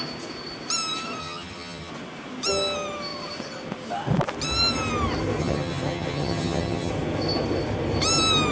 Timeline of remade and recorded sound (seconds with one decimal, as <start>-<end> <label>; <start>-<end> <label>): 0.0-1.2 recorded; 1.2-1.9 remade; 1.9-5.4 recorded; 5.4-6.9 remade; 6.9-8.5 recorded